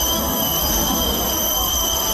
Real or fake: fake